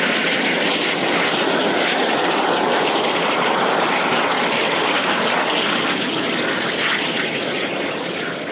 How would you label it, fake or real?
fake